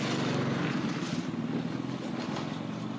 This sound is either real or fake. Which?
real